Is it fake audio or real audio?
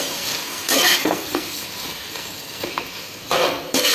fake